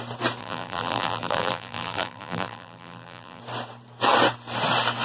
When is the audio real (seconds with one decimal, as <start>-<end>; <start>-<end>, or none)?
0.0-0.4; 3.4-5.0